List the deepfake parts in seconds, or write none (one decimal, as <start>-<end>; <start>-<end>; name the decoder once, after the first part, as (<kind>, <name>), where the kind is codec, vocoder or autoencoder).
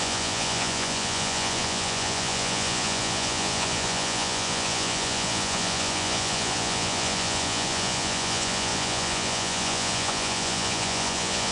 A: 0.0-11.5 (vocoder, Vocos)